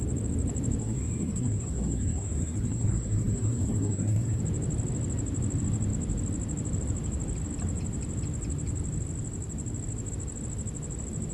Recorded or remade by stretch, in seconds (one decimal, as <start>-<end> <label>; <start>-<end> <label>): 0.0-0.8 recorded; 0.8-4.4 remade; 4.4-11.3 recorded